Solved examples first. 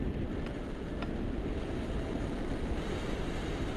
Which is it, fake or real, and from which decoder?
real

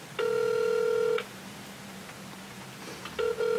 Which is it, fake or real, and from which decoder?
real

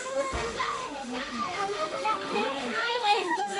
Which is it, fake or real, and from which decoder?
fake, autoencoder, DAC-VAE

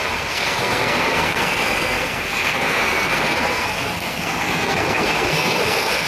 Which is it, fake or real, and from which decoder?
fake, codec, SNAC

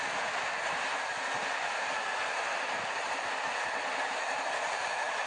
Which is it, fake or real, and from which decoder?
real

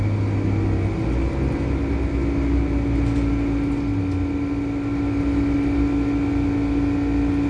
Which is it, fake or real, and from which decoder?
real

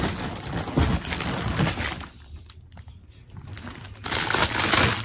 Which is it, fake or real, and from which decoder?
real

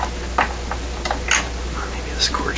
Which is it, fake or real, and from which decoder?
real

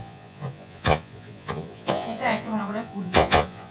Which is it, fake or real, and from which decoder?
fake, vocoder, Vocos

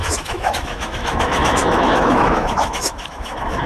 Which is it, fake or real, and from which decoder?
fake, autoencoder, DAC-VAE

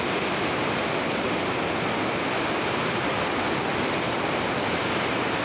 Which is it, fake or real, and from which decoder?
real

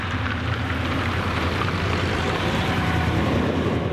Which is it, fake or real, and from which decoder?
fake, vocoder, BigVGAN v2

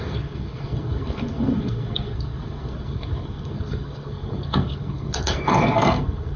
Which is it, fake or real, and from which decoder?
fake, codec, SNAC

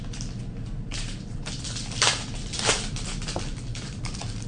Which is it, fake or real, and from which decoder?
fake, vocoder, BigVGAN v2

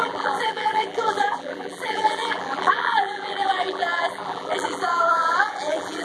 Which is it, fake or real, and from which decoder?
fake, vocoder, BigVGAN v2